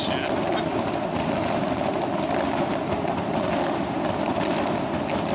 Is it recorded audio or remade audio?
recorded